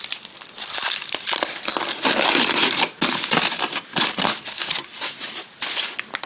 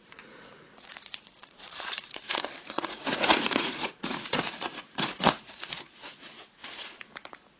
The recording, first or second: first